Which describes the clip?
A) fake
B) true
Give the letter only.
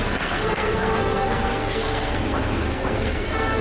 A